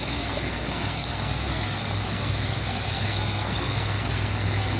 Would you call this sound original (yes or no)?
no